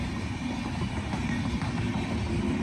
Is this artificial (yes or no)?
no